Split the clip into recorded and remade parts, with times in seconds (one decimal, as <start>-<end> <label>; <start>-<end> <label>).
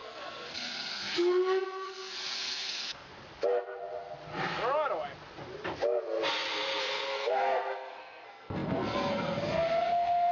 0.0-3.1 remade; 3.1-6.8 recorded; 6.8-10.3 remade